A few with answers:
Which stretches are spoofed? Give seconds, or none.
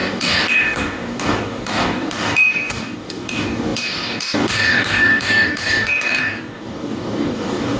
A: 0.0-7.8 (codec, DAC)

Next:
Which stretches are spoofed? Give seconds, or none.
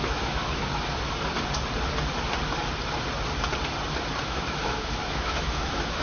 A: 0.0-0.6 (autoencoder, DAC-VAE); 4.2-6.0